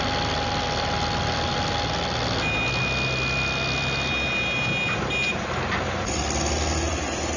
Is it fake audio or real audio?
real